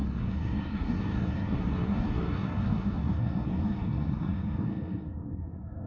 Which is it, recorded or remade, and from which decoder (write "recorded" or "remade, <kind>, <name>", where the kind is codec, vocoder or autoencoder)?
remade, codec, SNAC